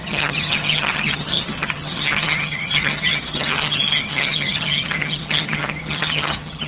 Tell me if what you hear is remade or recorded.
remade